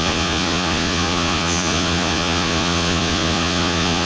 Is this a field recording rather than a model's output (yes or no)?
no